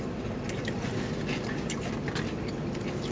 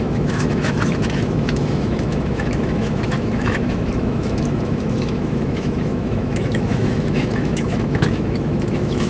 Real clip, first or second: first